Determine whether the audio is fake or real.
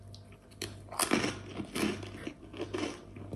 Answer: real